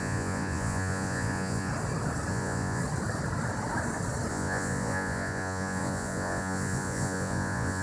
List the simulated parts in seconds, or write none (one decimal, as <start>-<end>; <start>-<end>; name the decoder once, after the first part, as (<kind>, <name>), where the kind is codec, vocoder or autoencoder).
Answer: 0.0-1.7 (vocoder, Vocos); 2.3-2.8; 4.3-7.8